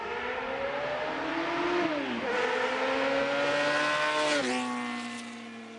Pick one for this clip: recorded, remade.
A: recorded